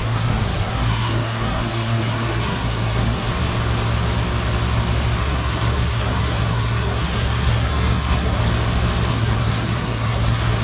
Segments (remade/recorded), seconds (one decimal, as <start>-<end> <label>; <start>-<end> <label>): 0.0-3.3 remade; 3.3-5.2 recorded; 5.2-8.4 remade; 8.4-9.1 recorded; 9.1-10.6 remade